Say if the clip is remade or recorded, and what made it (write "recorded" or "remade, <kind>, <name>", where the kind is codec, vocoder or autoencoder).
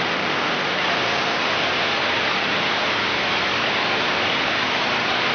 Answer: recorded